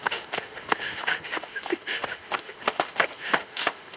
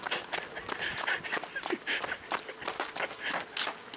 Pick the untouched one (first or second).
second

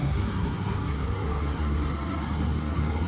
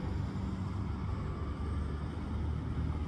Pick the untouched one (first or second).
second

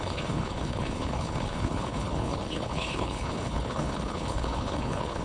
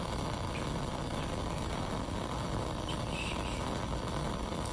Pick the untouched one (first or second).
second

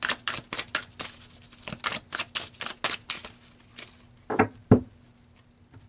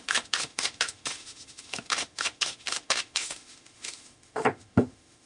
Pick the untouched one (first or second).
first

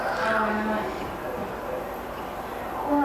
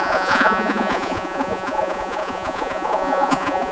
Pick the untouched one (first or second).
first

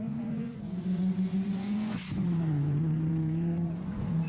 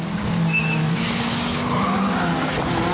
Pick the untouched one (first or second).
second